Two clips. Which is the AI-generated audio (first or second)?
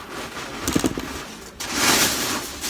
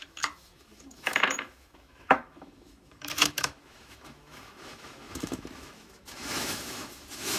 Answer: second